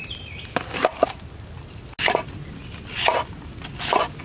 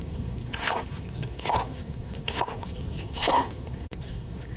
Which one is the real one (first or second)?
first